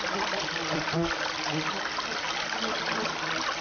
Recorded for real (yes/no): yes